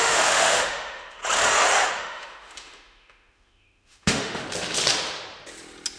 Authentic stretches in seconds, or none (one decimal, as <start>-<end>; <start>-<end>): 1.2-1.9; 4.4-6.0